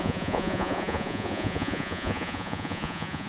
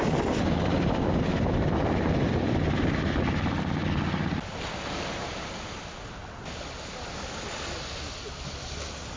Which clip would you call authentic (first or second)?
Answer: second